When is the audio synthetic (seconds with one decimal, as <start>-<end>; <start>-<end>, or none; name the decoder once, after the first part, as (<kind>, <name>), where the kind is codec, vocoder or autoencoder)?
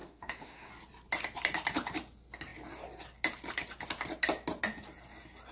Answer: 0.0-0.7 (autoencoder, DAC-VAE)